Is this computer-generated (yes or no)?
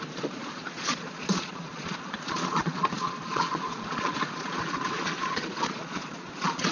yes